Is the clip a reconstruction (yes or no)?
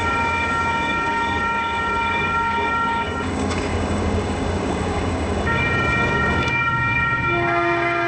yes